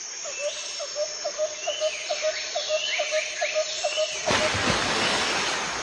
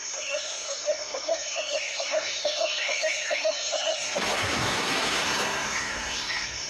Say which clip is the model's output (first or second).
second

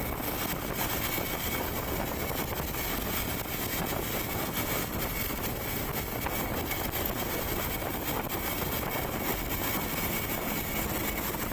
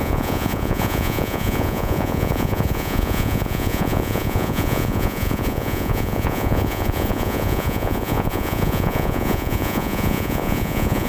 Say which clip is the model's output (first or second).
second